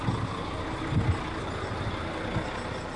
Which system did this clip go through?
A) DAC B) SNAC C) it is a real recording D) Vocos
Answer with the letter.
C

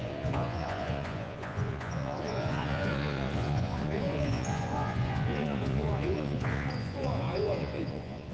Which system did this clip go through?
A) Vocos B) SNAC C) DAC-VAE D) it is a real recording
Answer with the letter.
A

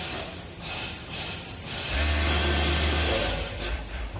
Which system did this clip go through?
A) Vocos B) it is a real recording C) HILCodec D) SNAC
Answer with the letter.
B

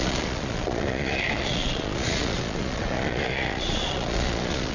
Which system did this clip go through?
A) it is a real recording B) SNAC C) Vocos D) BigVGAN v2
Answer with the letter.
C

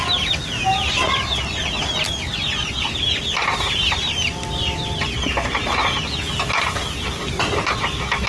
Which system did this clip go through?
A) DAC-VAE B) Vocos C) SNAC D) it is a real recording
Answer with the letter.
D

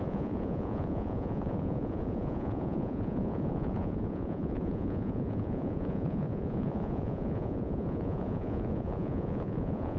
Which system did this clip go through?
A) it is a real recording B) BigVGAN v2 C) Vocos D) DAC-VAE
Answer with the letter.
C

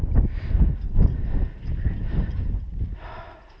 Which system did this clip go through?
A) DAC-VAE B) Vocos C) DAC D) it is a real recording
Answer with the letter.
D